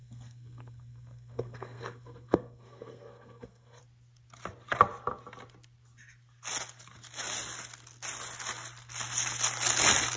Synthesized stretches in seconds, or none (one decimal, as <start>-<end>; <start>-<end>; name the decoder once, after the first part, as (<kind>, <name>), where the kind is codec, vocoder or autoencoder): 0.0-3.8 (codec, SNAC)